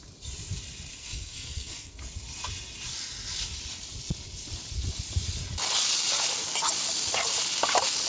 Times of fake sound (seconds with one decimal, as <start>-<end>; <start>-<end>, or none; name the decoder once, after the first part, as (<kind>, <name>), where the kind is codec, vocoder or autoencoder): 1.0-2.0 (codec, SNAC)